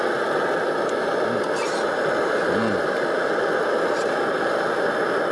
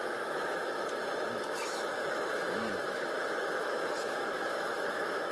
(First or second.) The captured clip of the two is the first